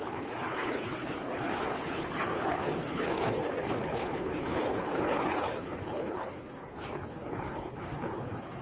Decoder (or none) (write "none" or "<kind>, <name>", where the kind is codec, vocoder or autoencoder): codec, HILCodec